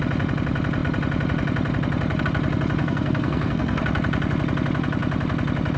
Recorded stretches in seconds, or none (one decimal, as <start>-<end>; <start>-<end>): 0.0-2.8; 3.8-5.8